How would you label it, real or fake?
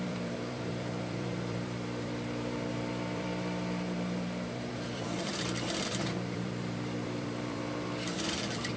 fake